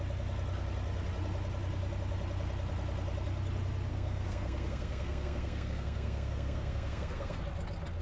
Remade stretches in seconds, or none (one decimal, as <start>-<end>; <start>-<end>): 3.9-7.4